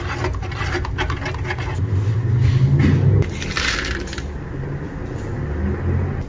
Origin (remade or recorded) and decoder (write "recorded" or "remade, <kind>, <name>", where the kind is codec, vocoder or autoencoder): recorded